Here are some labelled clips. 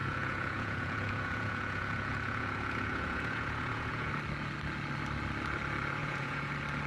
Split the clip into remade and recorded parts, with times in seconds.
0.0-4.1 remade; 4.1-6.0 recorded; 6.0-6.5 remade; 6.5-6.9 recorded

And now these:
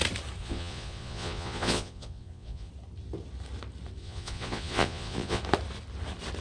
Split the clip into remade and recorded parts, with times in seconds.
0.0-0.4 recorded; 0.4-2.7 remade; 2.7-4.0 recorded; 4.0-5.4 remade; 5.4-6.4 recorded

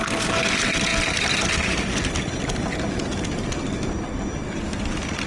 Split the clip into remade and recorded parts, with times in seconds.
0.0-5.3 recorded

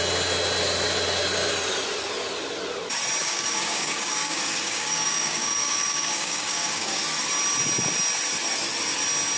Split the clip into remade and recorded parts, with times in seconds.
0.0-3.2 recorded; 3.2-7.0 remade; 7.0-9.4 recorded

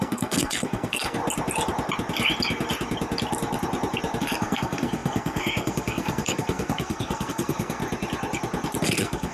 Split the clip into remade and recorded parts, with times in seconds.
0.0-1.2 remade; 1.2-4.2 recorded; 4.2-7.8 remade; 7.8-8.8 recorded; 8.8-9.3 remade